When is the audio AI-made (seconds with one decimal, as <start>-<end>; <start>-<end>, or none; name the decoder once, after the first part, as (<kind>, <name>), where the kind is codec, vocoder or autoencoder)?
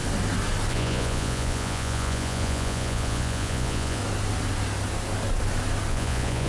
0.7-4.0 (vocoder, Vocos); 5.9-6.5